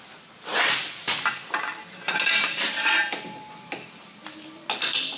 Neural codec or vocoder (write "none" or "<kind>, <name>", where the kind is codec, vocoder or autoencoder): none